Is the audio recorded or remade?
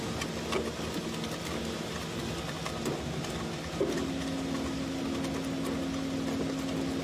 recorded